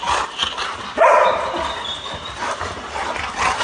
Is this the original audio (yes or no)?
yes